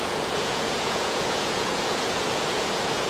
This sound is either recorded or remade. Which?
remade